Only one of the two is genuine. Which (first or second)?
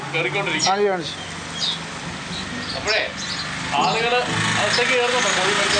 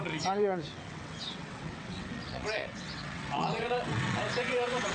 first